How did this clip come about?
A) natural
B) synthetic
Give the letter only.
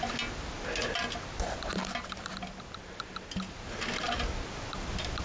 A